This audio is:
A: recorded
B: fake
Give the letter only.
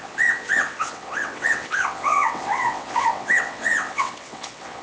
B